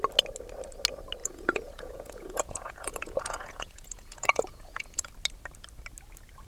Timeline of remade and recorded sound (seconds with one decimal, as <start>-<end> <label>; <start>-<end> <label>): 0.0-1.2 recorded; 1.2-5.1 remade; 5.1-6.5 recorded